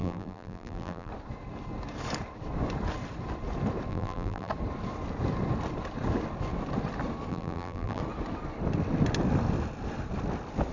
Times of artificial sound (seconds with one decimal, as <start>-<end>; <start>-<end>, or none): 0.0-1.1; 3.9-4.5; 7.3-8.0